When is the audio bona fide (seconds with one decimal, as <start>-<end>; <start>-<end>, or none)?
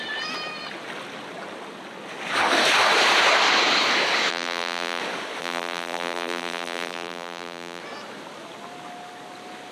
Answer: 0.0-4.3; 5.0-5.4; 7.8-9.7